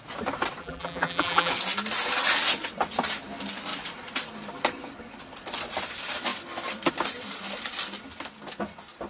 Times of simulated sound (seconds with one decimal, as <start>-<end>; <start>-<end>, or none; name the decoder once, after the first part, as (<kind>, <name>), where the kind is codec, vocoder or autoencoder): 0.6-1.5 (vocoder, BigVGAN v2)